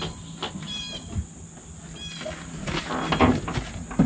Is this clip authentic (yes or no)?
yes